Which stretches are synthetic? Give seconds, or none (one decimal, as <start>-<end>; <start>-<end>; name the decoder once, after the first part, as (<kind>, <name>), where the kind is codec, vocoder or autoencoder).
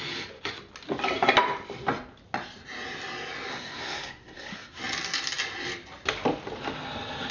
3.5-4.8 (codec, SNAC)